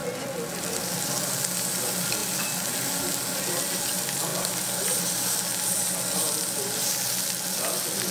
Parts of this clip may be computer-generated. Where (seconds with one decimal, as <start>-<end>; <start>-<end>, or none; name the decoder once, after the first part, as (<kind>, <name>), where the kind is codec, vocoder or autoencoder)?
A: none